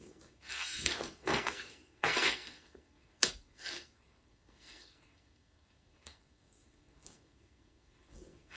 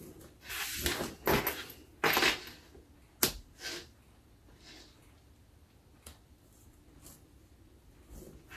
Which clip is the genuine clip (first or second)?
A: second